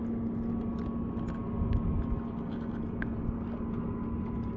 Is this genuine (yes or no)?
yes